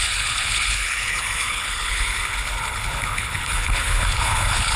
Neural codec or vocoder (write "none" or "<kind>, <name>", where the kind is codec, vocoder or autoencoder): codec, HILCodec